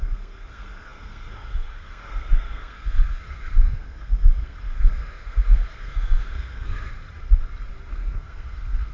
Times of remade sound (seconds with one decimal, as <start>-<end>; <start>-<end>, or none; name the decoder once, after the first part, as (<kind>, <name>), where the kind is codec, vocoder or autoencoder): 0.0-6.9 (codec, SNAC); 7.9-8.9